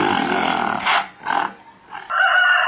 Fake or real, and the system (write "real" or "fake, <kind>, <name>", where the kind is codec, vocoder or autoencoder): real